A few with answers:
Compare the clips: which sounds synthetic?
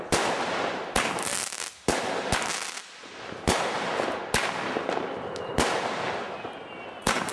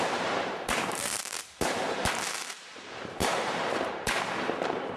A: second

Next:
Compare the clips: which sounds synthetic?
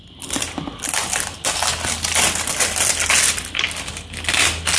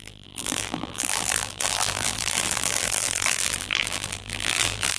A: second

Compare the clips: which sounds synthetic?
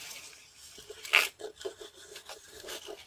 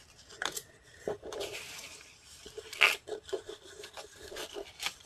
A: second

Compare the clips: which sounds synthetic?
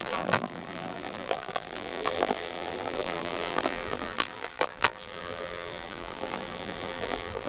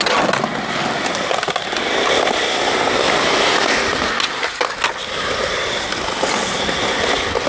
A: first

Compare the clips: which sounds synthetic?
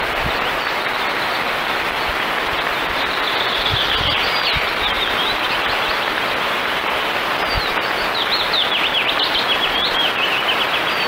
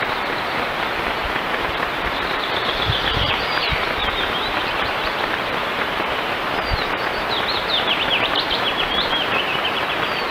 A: second